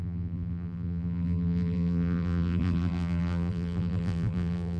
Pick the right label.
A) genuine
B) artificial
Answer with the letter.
B